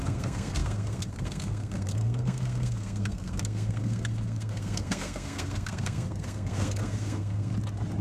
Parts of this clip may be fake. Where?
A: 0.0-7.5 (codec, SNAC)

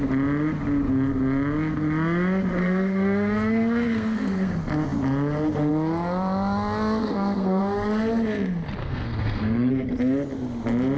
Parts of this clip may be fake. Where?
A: 2.6-4.5 (codec, SNAC); 7.0-7.6; 8.8-9.7

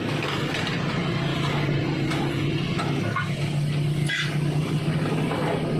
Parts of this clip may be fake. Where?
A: none